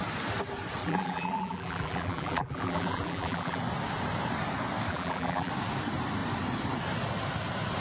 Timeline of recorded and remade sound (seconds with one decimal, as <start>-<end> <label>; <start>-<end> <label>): 0.0-0.8 recorded; 0.8-3.6 remade; 3.6-4.9 recorded; 4.9-5.5 remade; 5.5-7.8 recorded

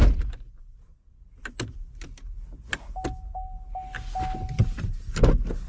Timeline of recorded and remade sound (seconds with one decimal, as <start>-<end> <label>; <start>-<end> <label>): 0.0-5.7 recorded

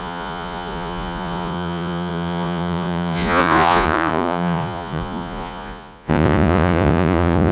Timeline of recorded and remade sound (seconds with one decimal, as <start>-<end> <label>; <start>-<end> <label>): 0.0-7.5 remade

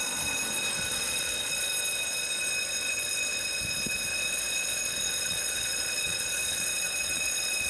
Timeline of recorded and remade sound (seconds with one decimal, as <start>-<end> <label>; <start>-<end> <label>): 0.0-0.9 recorded; 0.9-1.7 remade; 1.7-4.1 recorded; 4.1-7.7 remade

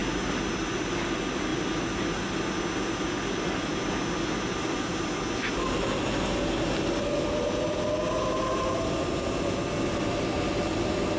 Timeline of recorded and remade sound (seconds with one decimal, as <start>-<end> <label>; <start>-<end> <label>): 0.0-11.2 recorded

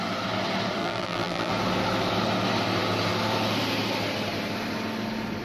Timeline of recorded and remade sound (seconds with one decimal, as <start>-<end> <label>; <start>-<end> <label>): 0.0-0.8 recorded; 0.8-1.5 remade; 1.5-5.4 recorded

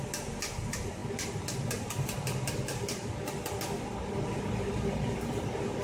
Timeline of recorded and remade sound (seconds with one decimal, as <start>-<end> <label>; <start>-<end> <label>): 0.0-5.8 recorded